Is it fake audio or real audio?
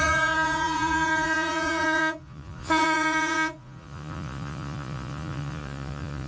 fake